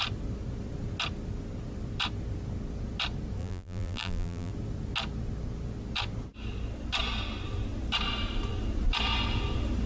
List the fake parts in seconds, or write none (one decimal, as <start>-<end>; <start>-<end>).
3.4-4.5